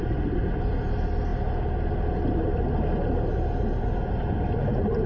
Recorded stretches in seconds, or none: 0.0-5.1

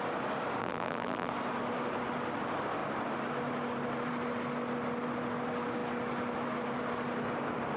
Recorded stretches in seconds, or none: 0.0-0.6; 1.3-7.8